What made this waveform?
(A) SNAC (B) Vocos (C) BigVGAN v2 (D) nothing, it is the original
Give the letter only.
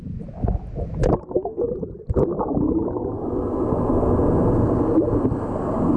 D